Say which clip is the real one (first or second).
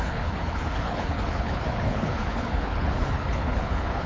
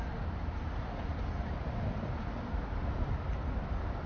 second